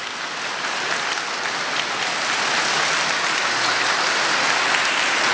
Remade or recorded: recorded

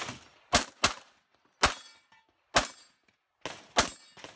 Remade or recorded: recorded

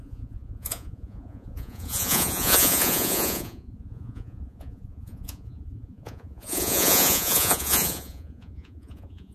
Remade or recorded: remade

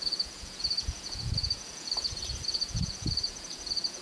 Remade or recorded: remade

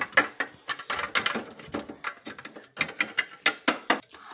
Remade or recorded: recorded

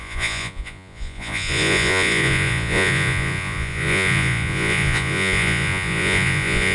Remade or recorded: remade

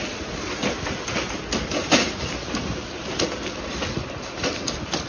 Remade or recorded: recorded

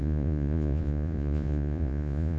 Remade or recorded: remade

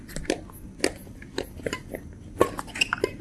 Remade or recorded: recorded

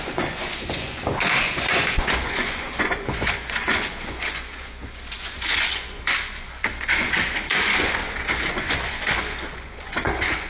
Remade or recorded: remade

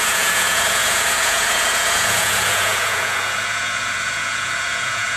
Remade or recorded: remade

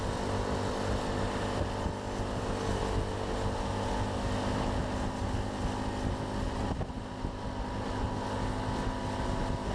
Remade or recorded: recorded